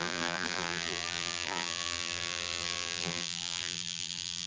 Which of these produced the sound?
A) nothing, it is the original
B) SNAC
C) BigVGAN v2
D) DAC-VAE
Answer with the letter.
C